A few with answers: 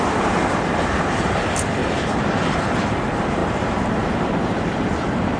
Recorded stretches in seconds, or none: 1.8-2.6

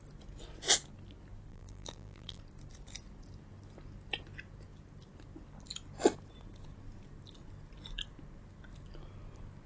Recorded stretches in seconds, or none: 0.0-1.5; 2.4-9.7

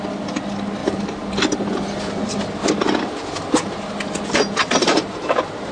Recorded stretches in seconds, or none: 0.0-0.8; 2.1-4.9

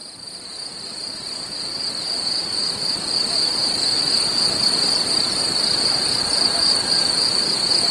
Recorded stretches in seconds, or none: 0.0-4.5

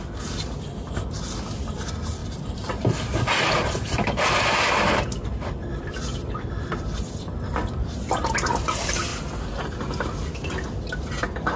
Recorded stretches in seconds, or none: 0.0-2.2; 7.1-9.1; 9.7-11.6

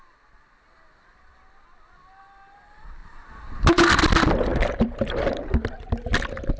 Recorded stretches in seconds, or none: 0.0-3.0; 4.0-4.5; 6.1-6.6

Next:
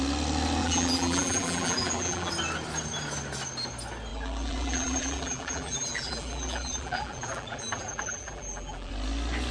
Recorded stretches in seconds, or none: 0.0-0.6; 2.3-4.1; 8.9-9.5

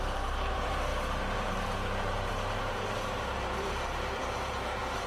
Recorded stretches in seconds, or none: none